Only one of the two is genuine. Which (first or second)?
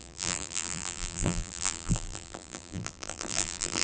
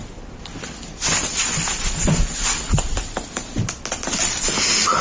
second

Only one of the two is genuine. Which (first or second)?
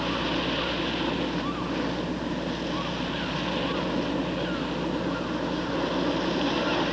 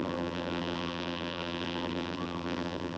first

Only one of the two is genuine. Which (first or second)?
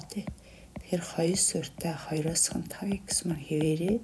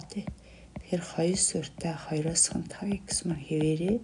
second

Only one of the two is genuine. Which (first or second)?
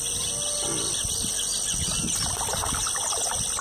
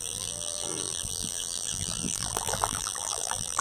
first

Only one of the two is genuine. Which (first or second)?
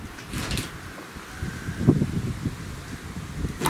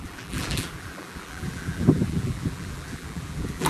first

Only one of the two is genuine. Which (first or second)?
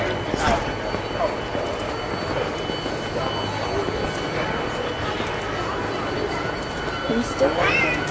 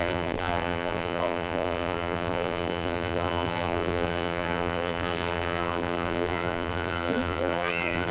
first